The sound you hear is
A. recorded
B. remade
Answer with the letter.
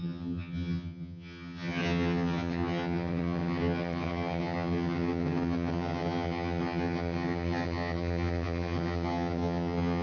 B